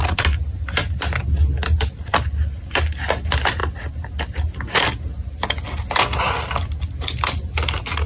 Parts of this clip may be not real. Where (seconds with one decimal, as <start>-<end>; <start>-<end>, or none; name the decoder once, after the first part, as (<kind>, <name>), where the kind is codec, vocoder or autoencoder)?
none